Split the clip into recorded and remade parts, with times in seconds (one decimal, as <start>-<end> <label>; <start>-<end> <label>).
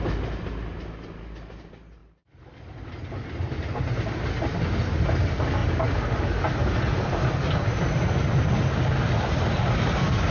0.0-10.3 recorded